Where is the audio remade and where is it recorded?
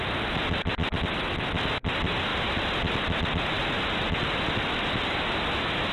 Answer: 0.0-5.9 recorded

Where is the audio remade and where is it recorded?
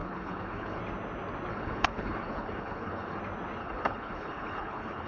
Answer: 0.0-0.8 remade; 0.8-1.5 recorded; 1.5-3.2 remade; 3.2-3.6 recorded; 3.6-5.1 remade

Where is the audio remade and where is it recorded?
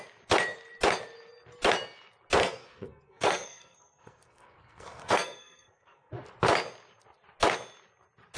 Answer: 0.0-2.4 recorded; 2.4-6.1 remade; 6.1-8.4 recorded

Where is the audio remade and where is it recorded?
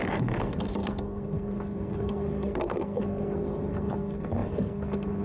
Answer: 0.0-5.2 remade